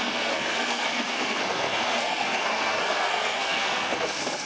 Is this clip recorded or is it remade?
remade